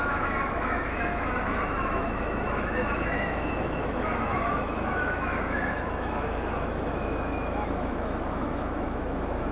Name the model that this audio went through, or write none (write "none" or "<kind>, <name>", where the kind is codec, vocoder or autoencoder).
autoencoder, DAC-VAE